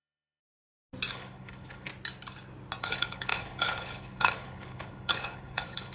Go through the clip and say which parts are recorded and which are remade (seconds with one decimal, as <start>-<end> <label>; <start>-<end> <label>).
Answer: 0.0-0.4 remade; 0.4-1.1 recorded; 1.1-1.9 remade; 1.9-2.8 recorded; 2.8-5.9 remade